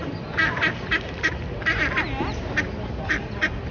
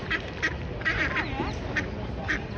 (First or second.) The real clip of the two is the first